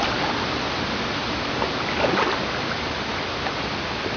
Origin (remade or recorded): recorded